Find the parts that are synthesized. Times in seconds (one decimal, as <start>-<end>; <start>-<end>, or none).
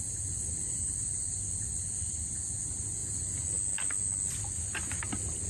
none